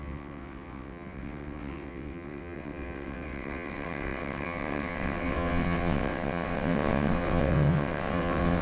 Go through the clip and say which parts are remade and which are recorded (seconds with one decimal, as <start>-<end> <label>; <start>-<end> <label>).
0.0-8.6 remade